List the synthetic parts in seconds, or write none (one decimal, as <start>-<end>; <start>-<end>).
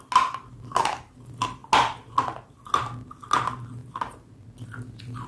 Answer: none